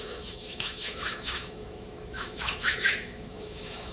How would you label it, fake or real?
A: fake